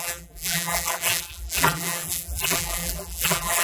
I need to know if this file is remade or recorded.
remade